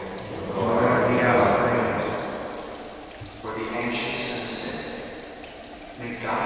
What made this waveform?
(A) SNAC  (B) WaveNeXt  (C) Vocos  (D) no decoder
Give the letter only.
D